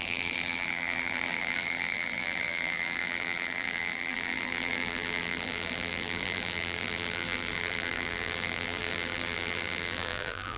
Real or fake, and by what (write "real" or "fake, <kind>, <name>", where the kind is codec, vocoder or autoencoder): fake, vocoder, BigVGAN v2